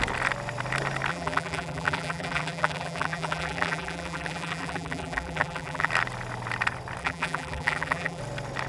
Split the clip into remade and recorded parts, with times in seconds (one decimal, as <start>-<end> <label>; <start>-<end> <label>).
0.0-1.1 recorded; 1.1-5.9 remade; 5.9-7.0 recorded; 7.0-8.2 remade; 8.2-8.7 recorded